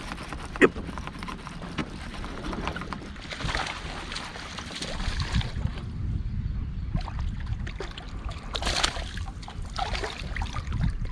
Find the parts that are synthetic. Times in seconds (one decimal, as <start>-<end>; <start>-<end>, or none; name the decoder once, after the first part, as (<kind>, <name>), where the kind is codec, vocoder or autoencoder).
none